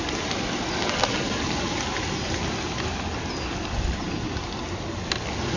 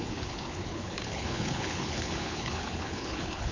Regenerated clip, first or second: second